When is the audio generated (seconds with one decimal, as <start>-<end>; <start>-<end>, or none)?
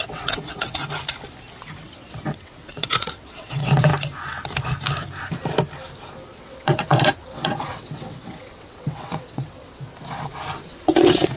0.0-0.8; 1.8-3.9; 6.4-9.9; 10.7-11.4